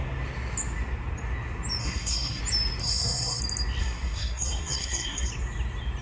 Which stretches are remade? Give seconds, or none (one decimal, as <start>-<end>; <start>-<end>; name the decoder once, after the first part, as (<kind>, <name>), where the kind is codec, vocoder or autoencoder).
1.8-2.4 (codec, SNAC); 2.8-3.4; 3.8-5.3